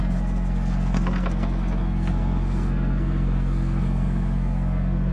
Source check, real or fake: fake